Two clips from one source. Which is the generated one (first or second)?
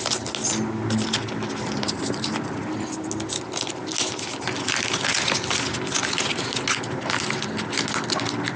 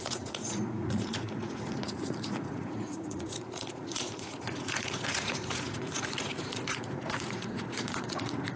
second